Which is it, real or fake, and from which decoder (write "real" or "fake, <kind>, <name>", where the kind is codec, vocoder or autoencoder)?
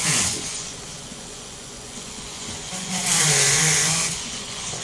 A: fake, vocoder, Vocos